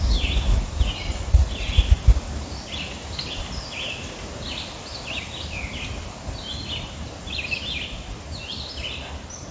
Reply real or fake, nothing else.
real